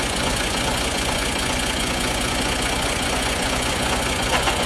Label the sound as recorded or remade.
remade